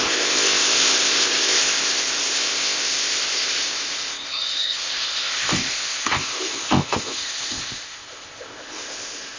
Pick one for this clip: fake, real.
fake